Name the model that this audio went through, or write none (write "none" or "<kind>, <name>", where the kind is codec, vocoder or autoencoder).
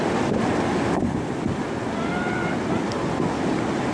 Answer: none